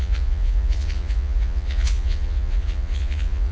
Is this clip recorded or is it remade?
remade